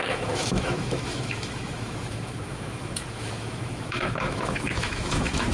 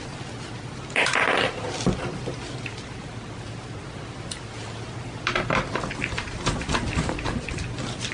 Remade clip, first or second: first